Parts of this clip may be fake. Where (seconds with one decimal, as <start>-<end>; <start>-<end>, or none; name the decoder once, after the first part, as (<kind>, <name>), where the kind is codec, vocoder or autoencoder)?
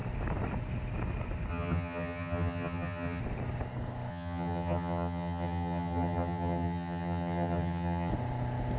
1.5-3.2 (vocoder, HiFi-GAN); 4.1-8.1